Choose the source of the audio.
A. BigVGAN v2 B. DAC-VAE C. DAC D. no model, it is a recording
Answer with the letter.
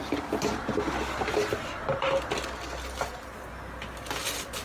D